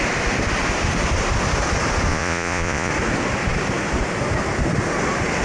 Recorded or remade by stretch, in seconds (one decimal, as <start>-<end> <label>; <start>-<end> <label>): 0.0-2.1 recorded; 2.1-2.9 remade; 2.9-5.4 recorded